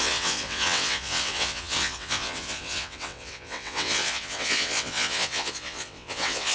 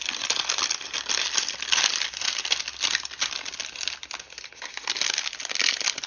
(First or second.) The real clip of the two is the second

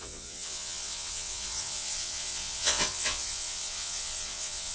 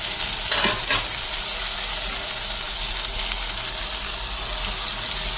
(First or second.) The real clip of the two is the second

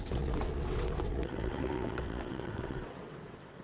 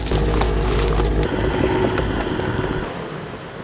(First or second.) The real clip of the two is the second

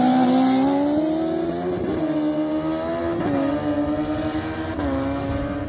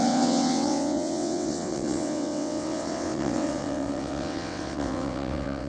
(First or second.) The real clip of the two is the first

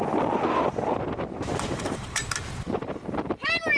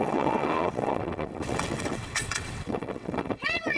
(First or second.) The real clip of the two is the first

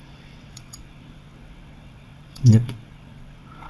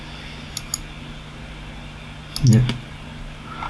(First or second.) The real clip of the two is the second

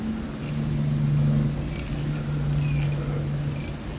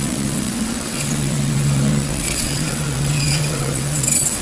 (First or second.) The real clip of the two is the first